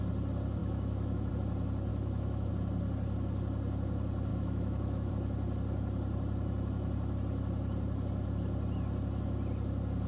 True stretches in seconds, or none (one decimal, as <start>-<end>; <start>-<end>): 0.0-0.6; 1.3-1.9; 2.5-4.3; 5.1-10.1